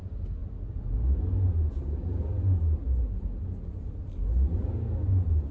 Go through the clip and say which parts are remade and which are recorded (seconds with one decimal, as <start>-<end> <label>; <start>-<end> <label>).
0.0-5.5 recorded

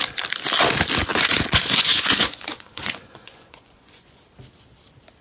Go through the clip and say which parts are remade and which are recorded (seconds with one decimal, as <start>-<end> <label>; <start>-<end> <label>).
0.0-1.1 recorded; 1.1-4.2 remade; 4.2-5.2 recorded

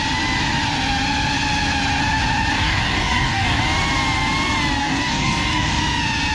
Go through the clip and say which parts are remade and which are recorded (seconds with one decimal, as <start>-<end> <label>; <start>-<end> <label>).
0.0-2.5 recorded; 2.5-3.6 remade; 3.6-4.8 recorded; 4.8-5.8 remade; 5.8-6.3 recorded

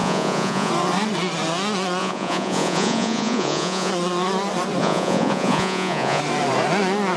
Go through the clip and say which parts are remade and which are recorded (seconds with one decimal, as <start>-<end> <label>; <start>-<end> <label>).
0.0-0.7 remade; 0.7-2.0 recorded; 2.0-3.9 remade; 3.9-4.8 recorded; 4.8-6.2 remade; 6.2-7.2 recorded

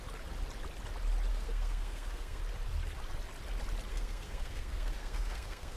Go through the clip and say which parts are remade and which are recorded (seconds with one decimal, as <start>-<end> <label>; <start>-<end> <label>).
0.0-1.3 recorded; 1.3-2.4 remade; 2.4-3.9 recorded; 3.9-5.8 remade

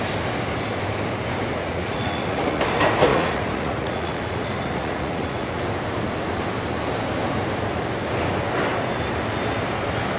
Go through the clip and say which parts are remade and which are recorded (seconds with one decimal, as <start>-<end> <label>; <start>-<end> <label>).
0.0-1.6 recorded; 1.6-2.6 remade; 2.6-3.1 recorded; 3.1-5.6 remade; 5.6-10.2 recorded

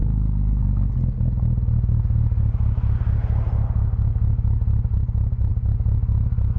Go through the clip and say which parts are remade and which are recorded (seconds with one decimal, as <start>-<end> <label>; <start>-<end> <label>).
0.0-0.6 remade; 0.6-6.6 recorded

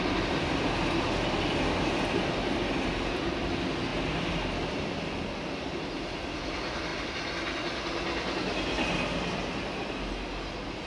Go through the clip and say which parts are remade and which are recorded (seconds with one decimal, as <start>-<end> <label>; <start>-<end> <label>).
0.0-10.9 recorded